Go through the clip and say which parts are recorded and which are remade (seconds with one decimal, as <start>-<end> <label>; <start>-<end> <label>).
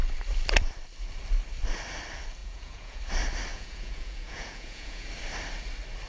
0.0-2.4 recorded; 2.4-3.0 remade; 3.0-3.5 recorded; 3.5-5.1 remade; 5.1-6.1 recorded